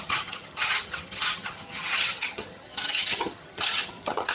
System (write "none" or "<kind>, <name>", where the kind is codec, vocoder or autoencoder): vocoder, HiFi-GAN